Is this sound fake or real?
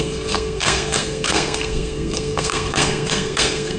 fake